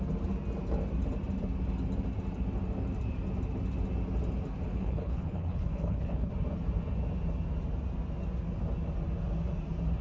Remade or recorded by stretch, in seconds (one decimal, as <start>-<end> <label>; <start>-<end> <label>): 0.0-4.7 recorded; 4.7-6.3 remade; 6.3-10.0 recorded